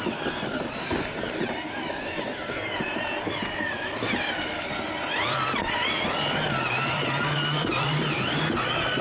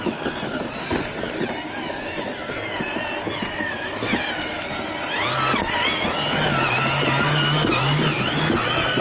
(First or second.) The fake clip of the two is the first